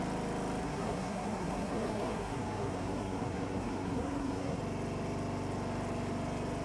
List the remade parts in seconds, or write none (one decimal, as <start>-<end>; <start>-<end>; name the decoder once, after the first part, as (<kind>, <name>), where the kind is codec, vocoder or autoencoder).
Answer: 0.6-4.6 (codec, SNAC)